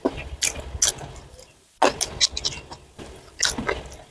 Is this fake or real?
real